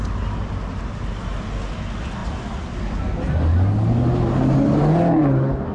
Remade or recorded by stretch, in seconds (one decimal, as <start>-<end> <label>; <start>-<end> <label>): 0.0-5.7 recorded

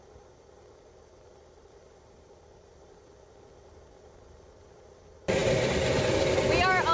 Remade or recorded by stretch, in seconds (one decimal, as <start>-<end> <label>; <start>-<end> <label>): 0.0-6.9 recorded

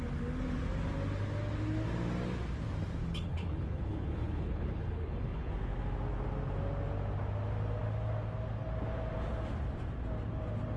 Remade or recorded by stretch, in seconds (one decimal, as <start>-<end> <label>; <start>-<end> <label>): 0.0-3.0 recorded; 3.0-5.5 remade; 5.5-10.8 recorded

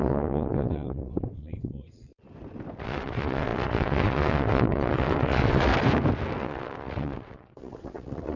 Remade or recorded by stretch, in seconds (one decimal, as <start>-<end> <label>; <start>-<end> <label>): 0.0-2.1 remade; 2.1-2.8 recorded; 2.8-5.7 remade; 5.7-6.4 recorded; 6.4-8.4 remade

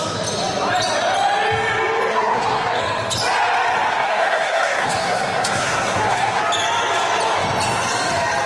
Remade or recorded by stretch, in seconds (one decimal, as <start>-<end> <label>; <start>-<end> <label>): 0.0-2.1 recorded; 2.1-2.8 remade; 2.8-3.9 recorded; 3.9-6.4 remade; 6.4-8.5 recorded